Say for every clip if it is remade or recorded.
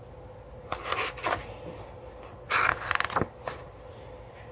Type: recorded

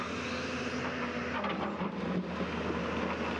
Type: recorded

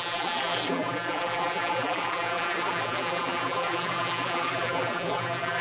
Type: remade